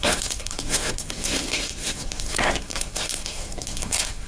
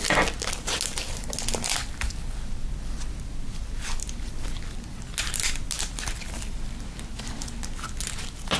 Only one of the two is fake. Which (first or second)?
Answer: first